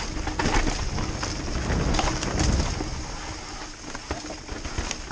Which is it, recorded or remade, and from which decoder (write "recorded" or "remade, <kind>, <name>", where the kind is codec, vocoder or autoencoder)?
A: recorded